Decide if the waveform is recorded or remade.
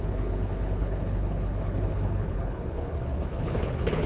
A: remade